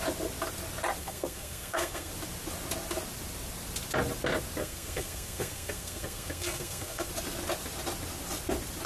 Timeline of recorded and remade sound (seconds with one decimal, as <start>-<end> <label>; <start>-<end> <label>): 0.0-1.0 recorded; 1.0-2.1 remade; 2.1-4.6 recorded; 4.6-7.1 remade; 7.1-8.9 recorded